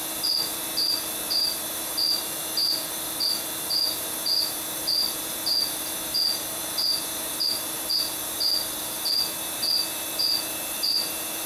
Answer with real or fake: fake